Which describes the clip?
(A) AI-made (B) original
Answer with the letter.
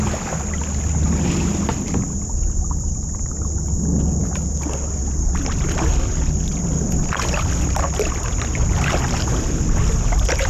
B